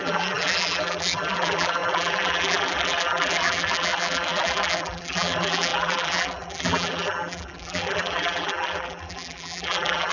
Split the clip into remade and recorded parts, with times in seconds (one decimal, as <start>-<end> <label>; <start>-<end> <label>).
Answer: 0.0-10.1 remade